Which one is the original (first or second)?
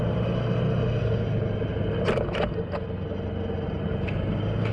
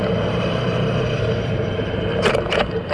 first